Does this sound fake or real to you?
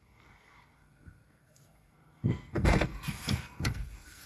fake